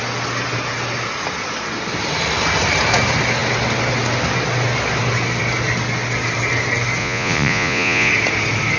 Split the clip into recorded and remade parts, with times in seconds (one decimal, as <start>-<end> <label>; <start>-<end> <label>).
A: 0.0-7.0 recorded; 7.0-8.1 remade; 8.1-8.8 recorded